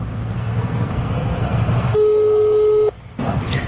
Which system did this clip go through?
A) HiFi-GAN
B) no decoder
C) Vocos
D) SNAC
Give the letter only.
D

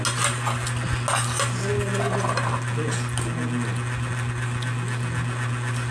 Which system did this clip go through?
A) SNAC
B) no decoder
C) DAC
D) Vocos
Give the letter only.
B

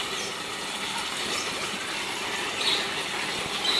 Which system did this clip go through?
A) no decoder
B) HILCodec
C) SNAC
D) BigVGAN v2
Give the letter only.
A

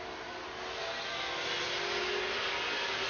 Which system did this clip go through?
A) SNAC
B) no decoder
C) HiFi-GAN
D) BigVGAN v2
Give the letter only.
B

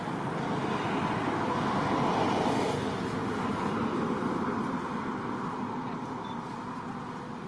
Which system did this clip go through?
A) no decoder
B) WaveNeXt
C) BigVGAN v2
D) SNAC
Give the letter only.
A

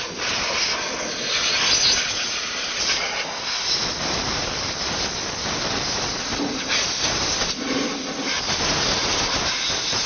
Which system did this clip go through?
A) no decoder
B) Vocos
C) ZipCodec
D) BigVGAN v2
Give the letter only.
A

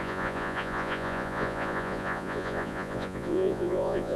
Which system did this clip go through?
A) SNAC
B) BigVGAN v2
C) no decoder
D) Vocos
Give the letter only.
D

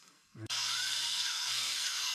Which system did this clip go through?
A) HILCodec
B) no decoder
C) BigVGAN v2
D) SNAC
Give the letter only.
D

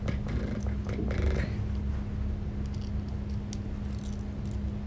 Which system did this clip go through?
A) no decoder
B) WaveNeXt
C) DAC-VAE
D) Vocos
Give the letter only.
A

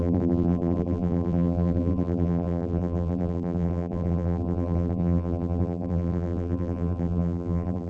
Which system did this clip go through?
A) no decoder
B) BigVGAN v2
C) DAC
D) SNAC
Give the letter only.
B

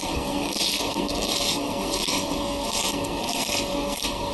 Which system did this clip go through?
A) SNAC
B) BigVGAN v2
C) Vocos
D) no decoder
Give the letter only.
A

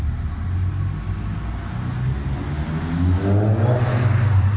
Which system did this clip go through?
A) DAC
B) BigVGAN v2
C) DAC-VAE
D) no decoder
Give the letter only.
D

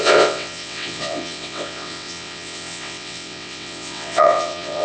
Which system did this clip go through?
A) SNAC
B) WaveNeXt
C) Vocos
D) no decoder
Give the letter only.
B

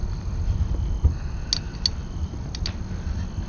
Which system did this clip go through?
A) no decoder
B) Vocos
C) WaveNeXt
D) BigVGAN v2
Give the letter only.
A